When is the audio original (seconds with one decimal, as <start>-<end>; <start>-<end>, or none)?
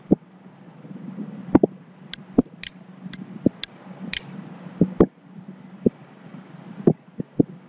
0.0-7.7